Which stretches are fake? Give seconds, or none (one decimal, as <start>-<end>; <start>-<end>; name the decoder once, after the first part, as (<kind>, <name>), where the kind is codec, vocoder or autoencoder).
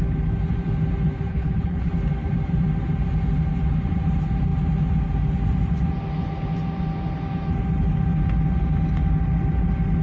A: 1.3-1.9 (codec, HILCodec)